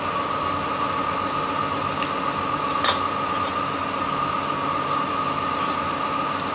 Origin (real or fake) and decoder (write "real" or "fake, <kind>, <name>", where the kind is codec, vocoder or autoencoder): real